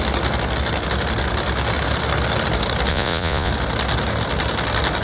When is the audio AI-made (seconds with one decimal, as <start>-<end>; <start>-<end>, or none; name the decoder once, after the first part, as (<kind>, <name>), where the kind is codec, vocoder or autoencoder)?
2.9-3.5 (vocoder, Vocos)

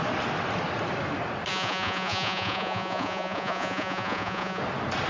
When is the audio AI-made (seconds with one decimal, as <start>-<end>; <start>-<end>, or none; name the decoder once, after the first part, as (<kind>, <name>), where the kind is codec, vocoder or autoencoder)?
1.5-4.6 (vocoder, Vocos)

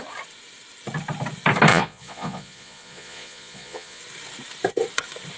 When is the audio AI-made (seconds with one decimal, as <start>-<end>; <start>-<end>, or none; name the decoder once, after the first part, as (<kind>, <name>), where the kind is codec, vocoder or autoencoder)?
1.7-4.0 (vocoder, Vocos)

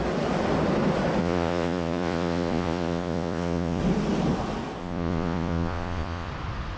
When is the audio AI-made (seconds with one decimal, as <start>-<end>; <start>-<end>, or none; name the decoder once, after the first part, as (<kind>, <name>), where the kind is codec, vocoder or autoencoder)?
1.2-3.8 (vocoder, Vocos); 4.8-6.3

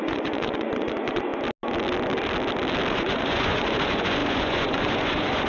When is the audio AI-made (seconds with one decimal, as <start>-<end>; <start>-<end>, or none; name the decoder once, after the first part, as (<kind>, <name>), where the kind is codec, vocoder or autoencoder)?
0.0-1.3 (vocoder, Vocos); 2.9-5.5

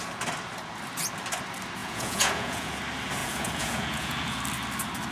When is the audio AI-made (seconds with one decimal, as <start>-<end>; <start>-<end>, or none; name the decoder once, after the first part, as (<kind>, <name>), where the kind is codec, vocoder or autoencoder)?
1.8-2.8 (vocoder, Vocos); 3.2-4.4

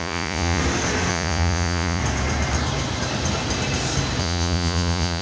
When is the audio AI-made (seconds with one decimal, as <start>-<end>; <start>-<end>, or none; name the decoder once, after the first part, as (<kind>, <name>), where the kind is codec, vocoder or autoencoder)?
0.0-0.6 (vocoder, Vocos); 1.1-2.0; 4.2-5.2